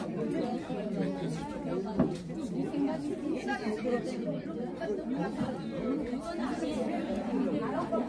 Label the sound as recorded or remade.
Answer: recorded